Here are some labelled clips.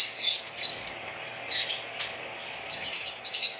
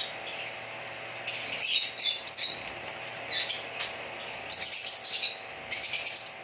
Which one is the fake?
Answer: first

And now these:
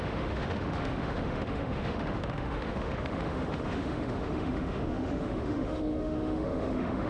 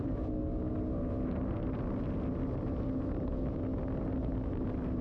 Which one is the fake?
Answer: first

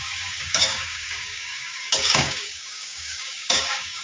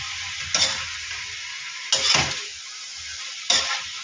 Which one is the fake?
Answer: first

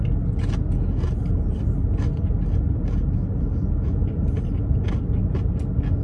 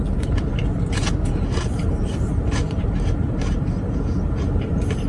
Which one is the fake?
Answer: second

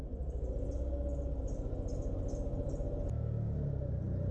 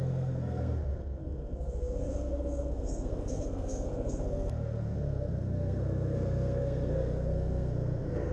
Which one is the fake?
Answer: second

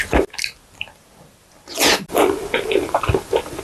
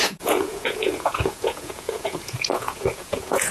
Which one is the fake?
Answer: second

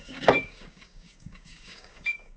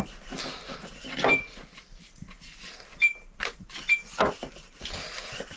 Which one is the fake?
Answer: first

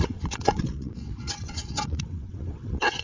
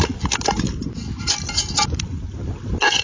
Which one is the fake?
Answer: first